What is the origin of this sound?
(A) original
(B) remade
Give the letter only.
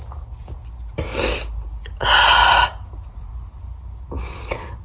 A